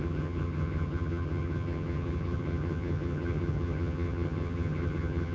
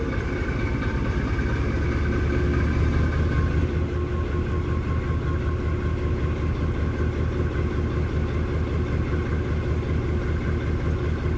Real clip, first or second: second